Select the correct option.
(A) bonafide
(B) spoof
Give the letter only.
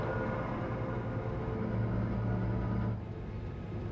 A